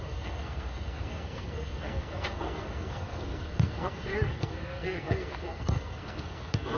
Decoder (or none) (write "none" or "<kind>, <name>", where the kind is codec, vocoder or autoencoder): codec, SNAC